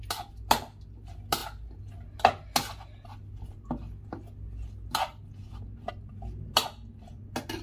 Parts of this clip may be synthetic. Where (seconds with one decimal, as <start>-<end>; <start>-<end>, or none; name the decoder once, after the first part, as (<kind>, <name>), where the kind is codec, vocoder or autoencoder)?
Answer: none